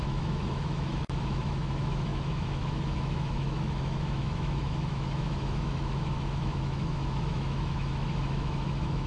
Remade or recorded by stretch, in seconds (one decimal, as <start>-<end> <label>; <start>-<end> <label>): 0.0-9.1 remade